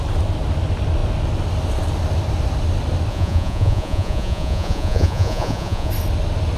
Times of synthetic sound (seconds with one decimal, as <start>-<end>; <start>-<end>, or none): 3.1-5.9